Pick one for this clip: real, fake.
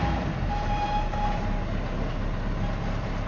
real